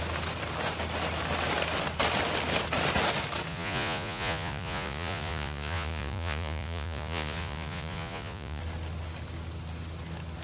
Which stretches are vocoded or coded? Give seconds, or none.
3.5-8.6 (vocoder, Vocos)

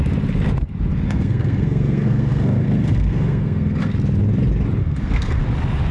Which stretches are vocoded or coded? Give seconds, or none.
0.9-3.9 (codec, SNAC); 4.8-5.4

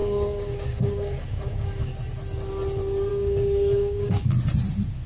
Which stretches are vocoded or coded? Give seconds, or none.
0.0-1.9 (codec, DAC); 3.1-4.3

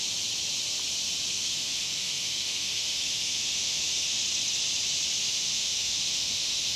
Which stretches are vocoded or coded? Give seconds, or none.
1.3-4.2 (autoencoder, DAC-VAE); 5.2-6.8

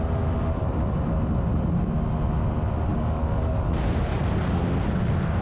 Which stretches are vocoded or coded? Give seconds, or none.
2.9-3.5 (codec, DAC); 4.1-4.6

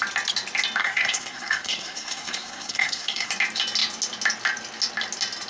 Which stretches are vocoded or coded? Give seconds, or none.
0.8-3.3 (codec, SNAC)

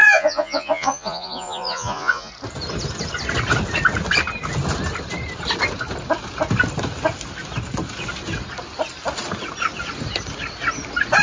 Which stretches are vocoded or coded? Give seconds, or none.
0.0-2.3 (vocoder, Vocos)